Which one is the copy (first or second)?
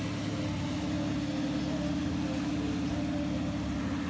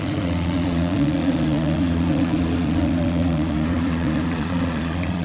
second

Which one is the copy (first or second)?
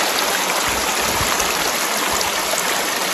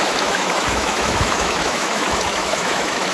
second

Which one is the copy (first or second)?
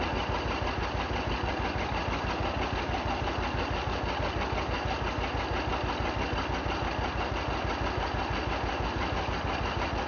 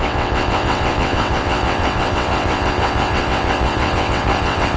second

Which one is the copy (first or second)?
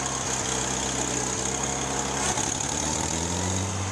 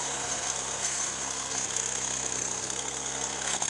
second